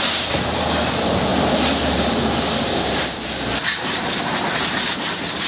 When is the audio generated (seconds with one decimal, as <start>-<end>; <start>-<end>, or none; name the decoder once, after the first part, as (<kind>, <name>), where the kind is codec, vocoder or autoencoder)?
none